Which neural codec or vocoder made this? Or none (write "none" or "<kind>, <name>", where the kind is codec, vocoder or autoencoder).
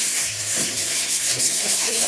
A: codec, SNAC